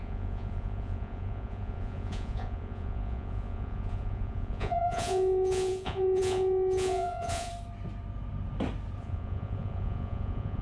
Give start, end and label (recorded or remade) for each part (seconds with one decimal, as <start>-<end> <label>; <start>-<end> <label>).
0.0-7.5 remade; 7.5-9.0 recorded; 9.0-10.6 remade

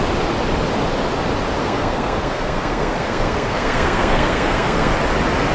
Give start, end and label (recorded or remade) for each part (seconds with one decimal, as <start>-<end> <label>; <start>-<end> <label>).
0.0-1.6 recorded; 1.6-4.9 remade; 4.9-5.5 recorded

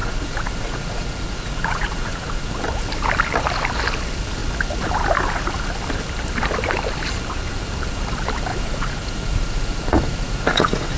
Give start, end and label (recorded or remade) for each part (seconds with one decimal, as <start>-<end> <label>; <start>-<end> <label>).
0.0-2.5 remade; 2.5-8.5 recorded; 8.5-11.0 remade